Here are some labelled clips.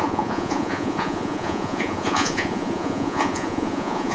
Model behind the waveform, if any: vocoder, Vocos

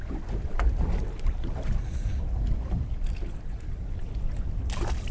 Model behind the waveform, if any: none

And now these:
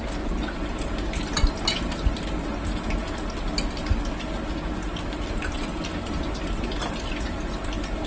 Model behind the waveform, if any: none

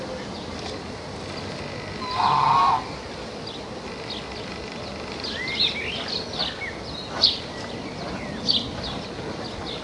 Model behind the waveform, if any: none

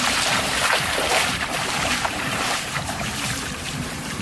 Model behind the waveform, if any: vocoder, BigVGAN v2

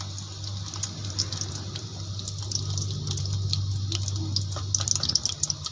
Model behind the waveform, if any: none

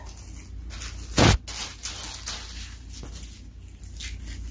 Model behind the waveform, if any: none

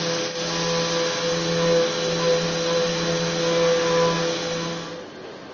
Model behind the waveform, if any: none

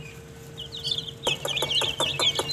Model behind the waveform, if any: none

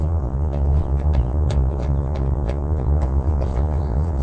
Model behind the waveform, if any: vocoder, Vocos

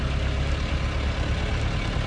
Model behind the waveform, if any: none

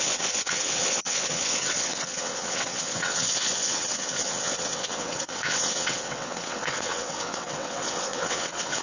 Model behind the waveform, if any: vocoder, WaveNeXt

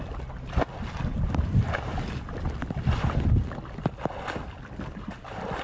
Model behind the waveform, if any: none